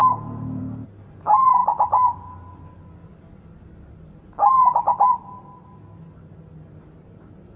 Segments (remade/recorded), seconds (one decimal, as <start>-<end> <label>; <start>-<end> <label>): 0.0-7.6 recorded